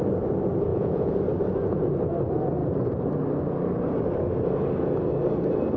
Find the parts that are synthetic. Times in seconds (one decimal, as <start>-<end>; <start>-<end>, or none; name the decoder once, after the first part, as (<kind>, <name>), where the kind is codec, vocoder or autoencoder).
0.7-1.2 (vocoder, Vocos)